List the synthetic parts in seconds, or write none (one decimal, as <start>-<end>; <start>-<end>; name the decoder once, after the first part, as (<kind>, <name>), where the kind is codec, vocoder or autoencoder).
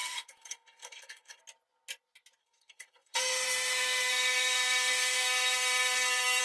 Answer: 0.0-1.4 (codec, SNAC); 2.4-6.4